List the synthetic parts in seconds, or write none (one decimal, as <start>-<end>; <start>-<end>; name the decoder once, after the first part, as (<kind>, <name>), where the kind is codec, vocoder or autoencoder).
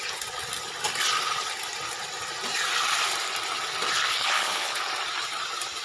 4.2-4.8 (codec, HILCodec)